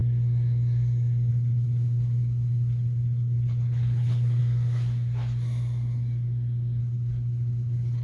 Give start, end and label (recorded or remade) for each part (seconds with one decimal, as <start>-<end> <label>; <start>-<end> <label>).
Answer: 0.0-1.3 recorded; 1.3-4.4 remade; 4.4-6.8 recorded; 6.8-8.0 remade